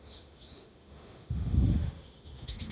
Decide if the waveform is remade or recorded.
remade